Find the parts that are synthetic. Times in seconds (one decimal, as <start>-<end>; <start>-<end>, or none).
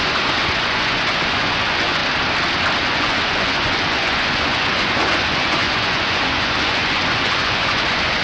0.0-2.0; 2.8-8.2